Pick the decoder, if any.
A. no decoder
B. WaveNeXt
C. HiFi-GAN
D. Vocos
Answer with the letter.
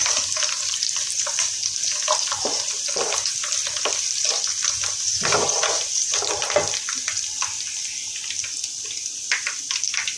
A